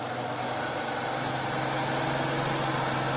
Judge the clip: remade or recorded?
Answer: recorded